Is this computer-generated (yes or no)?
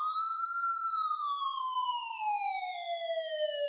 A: yes